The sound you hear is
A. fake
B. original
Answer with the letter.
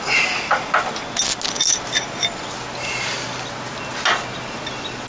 B